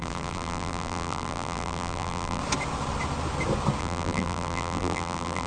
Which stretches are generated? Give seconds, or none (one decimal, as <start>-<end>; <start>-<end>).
0.0-2.4; 3.8-5.5